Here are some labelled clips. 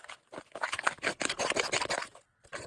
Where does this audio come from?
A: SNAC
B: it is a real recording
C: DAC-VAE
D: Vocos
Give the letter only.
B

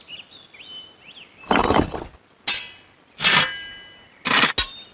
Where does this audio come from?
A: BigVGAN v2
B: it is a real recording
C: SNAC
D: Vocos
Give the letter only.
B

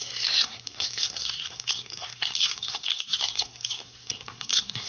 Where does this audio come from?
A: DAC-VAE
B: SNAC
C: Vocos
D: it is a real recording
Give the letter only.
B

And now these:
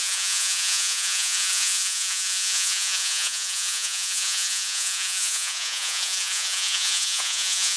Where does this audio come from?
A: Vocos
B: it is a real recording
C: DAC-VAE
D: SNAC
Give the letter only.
A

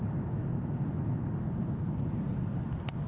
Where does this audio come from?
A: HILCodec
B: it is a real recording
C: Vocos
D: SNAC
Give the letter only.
B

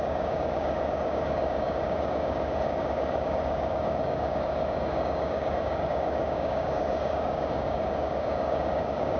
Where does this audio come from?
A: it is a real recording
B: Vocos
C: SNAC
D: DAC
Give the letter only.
D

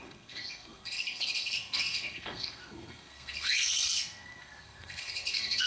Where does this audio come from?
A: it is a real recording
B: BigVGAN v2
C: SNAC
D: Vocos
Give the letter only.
C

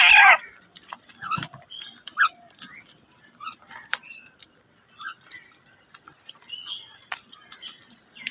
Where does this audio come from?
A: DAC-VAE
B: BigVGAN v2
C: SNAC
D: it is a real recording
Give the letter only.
B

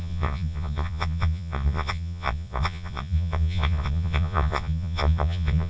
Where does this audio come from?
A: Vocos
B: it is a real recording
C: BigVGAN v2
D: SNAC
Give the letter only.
A